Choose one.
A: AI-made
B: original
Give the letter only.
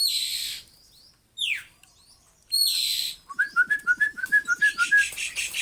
A